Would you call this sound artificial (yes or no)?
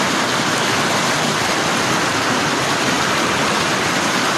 no